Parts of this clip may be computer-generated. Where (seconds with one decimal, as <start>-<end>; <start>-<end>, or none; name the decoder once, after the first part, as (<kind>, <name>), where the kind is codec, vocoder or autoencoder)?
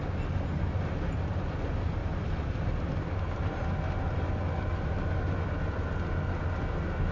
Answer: 2.0-2.9 (vocoder, BigVGAN v2)